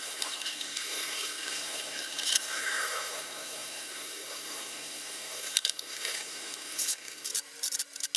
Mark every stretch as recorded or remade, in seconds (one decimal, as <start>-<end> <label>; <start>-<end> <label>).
0.0-7.3 remade; 7.3-8.2 recorded